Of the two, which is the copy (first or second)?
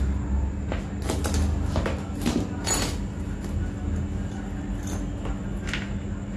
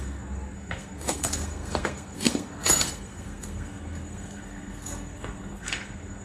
second